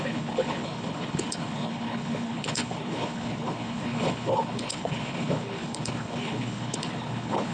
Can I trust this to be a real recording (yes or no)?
no